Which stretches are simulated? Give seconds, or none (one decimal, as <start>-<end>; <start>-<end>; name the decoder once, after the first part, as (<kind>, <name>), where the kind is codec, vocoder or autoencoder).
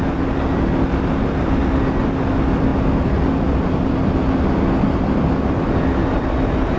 none